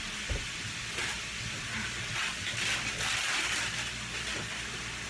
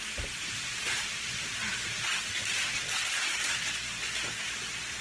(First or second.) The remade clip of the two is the second